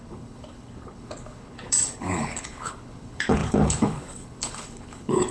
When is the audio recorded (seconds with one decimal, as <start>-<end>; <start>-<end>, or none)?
none